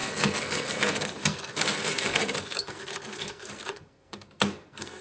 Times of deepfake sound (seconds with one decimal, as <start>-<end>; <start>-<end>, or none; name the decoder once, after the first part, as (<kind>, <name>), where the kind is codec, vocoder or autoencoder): 0.0-5.0 (codec, SNAC)